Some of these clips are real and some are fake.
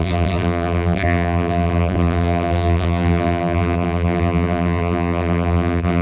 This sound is fake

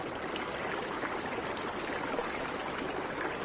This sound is real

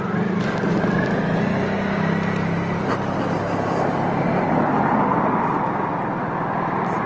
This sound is real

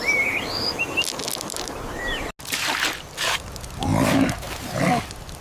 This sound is real